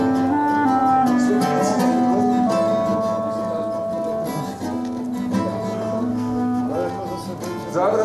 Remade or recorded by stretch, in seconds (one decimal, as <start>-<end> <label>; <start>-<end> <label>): 0.0-6.1 recorded; 6.1-6.6 remade; 6.6-8.0 recorded

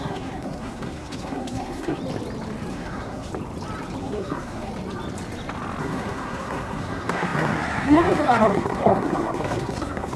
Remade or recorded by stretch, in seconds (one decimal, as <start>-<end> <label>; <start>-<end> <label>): 0.0-2.0 remade; 2.0-2.7 recorded; 2.7-3.3 remade; 3.3-4.0 recorded; 4.0-4.7 remade; 4.7-5.8 recorded; 5.8-10.2 remade

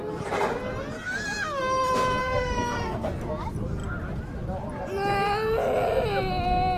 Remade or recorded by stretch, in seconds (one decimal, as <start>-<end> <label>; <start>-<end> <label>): 0.0-2.2 recorded; 2.2-3.1 remade; 3.1-6.8 recorded

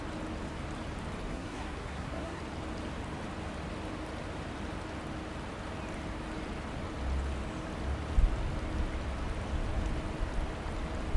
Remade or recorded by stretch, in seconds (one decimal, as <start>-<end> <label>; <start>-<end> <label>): 0.0-1.3 recorded; 1.3-2.4 remade; 2.4-11.2 recorded

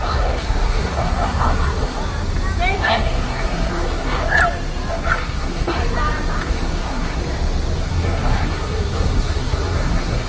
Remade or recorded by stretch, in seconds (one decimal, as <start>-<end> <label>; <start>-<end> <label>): 0.0-2.0 remade; 2.0-2.8 recorded; 2.8-4.4 remade; 4.4-4.9 recorded; 4.9-5.8 remade; 5.8-6.4 recorded; 6.4-7.2 remade; 7.2-7.8 recorded; 7.8-10.3 remade

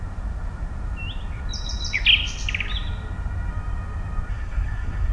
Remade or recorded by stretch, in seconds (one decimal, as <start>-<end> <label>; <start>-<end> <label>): 0.0-4.3 recorded; 4.3-5.1 remade

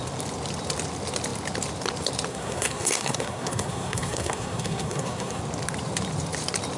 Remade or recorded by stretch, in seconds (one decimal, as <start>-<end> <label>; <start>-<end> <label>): 0.0-2.3 recorded; 2.3-5.4 remade; 5.4-6.8 recorded

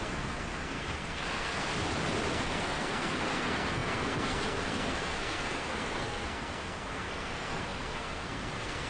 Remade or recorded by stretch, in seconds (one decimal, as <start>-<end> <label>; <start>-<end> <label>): 0.0-1.7 remade; 1.7-2.3 recorded; 2.3-8.9 remade